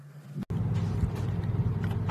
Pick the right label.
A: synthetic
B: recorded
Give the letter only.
B